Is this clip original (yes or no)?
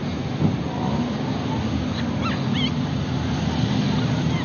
yes